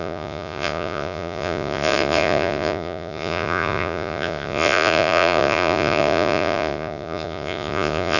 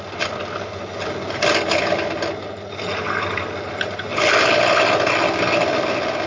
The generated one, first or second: first